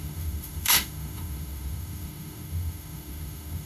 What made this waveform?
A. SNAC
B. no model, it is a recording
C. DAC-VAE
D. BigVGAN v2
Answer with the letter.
C